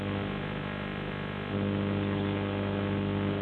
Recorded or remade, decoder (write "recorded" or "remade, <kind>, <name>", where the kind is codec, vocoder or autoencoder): recorded